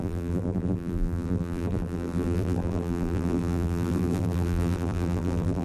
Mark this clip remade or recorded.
remade